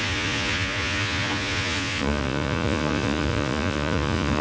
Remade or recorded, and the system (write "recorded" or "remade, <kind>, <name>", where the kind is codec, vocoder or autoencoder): remade, vocoder, Vocos